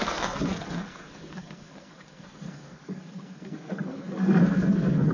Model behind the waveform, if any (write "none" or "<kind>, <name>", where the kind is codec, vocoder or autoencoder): codec, SNAC